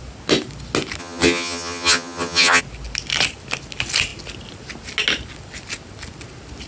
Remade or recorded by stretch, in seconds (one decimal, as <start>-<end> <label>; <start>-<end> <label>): 0.0-1.0 recorded; 1.0-2.6 remade; 2.6-6.7 recorded